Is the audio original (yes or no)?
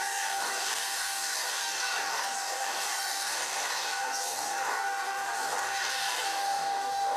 no